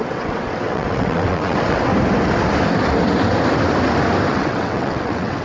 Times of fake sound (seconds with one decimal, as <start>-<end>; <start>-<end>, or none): 0.0-1.9; 4.3-5.4